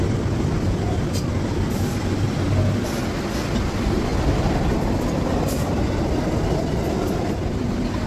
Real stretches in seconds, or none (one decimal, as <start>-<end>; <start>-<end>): 0.0-8.1